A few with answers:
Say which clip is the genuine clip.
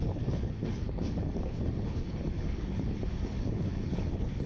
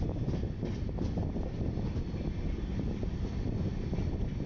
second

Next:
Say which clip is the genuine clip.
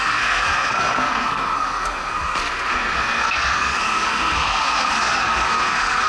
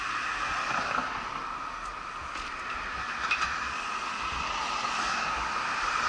second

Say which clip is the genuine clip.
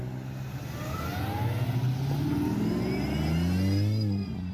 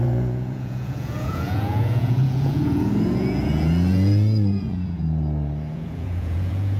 first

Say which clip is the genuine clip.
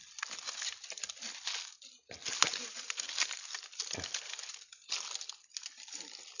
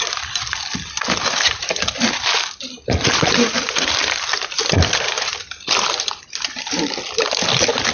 first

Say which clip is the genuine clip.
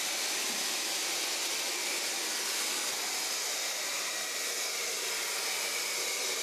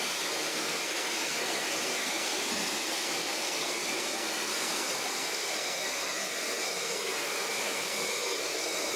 first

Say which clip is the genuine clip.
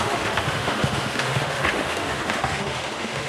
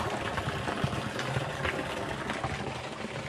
second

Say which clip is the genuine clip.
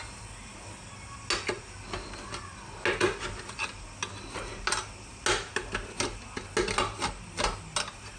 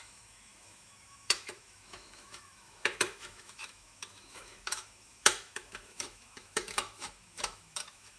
first